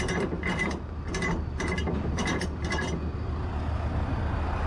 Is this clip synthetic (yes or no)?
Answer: no